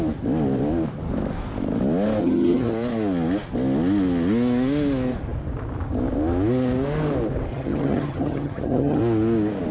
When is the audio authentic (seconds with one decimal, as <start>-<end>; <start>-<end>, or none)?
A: 0.0-2.2; 2.7-7.5; 9.0-9.7